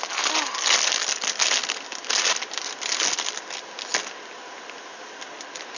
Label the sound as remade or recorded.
recorded